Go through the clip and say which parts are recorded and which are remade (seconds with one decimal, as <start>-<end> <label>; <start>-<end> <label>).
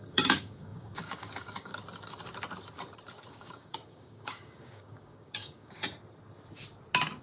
0.0-1.7 remade; 1.7-3.3 recorded; 3.3-5.8 remade; 5.8-7.2 recorded